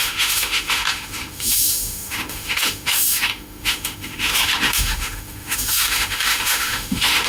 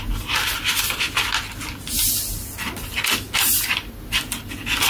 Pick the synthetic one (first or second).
first